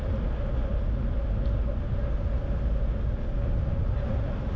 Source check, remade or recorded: recorded